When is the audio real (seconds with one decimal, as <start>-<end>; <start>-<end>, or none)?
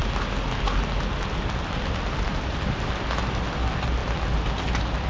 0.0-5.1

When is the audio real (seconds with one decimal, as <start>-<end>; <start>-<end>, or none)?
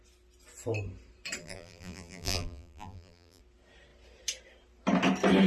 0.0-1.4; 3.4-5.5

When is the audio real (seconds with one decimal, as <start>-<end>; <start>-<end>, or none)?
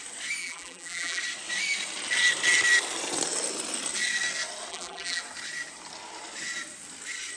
0.0-0.4; 1.2-4.7; 5.2-7.4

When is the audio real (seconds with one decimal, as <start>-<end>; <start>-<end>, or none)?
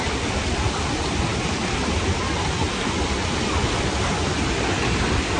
0.0-5.4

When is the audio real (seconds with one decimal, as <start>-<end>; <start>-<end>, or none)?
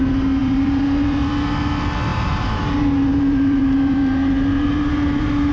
0.0-0.4; 1.3-2.1